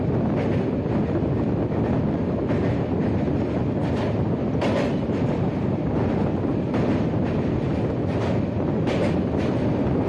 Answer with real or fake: real